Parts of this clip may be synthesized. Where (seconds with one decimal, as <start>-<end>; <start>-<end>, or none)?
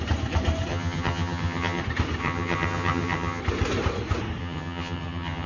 0.7-1.8; 2.2-3.4; 4.4-5.5